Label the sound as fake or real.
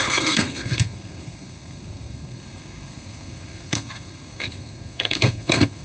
fake